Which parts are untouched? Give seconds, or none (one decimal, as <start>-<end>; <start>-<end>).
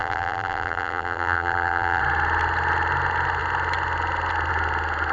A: 2.0-5.1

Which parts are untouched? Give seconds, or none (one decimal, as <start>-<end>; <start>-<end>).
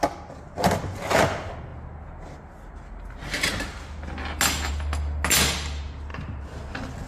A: 0.0-7.1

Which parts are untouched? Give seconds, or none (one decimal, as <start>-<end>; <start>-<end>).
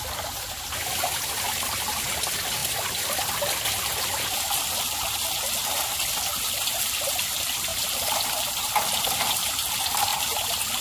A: 0.0-2.6; 4.8-5.6; 7.1-7.7; 9.5-10.8